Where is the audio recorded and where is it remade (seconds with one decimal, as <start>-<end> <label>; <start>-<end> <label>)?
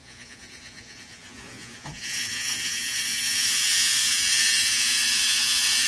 0.0-5.9 remade